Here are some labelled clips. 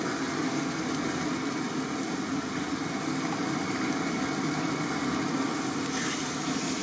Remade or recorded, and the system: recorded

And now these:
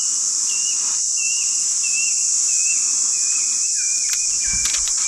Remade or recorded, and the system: recorded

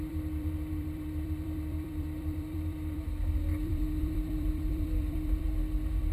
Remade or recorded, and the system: remade, vocoder, BigVGAN v2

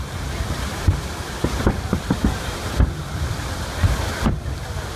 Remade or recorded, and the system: remade, vocoder, BigVGAN v2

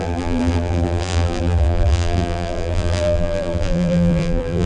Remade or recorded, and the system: remade, vocoder, BigVGAN v2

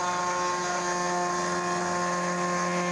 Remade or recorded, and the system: recorded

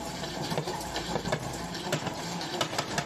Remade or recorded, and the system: remade, vocoder, BigVGAN v2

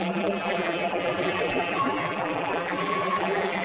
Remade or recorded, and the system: remade, vocoder, BigVGAN v2